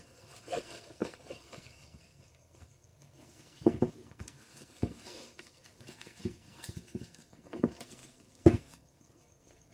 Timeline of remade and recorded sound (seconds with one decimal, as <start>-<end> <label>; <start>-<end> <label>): 0.0-9.7 remade